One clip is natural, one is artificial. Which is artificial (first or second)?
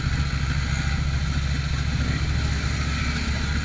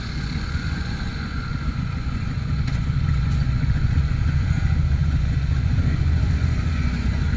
second